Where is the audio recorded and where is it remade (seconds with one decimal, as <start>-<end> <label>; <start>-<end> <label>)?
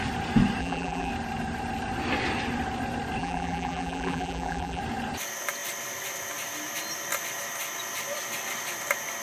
0.0-0.6 recorded; 0.6-1.1 remade; 1.1-3.2 recorded; 3.2-4.8 remade; 4.8-9.2 recorded